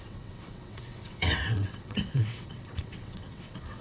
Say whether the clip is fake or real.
fake